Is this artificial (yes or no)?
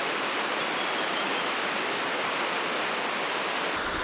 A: no